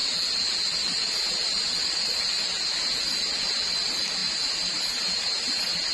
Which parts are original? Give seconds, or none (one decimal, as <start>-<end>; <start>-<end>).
0.0-5.9